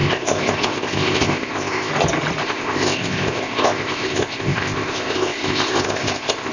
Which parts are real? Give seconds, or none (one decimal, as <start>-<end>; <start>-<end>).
1.9-2.4